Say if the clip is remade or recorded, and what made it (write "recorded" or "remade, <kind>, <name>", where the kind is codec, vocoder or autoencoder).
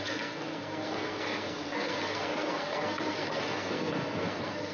remade, codec, SNAC